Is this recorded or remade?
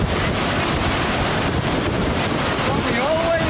recorded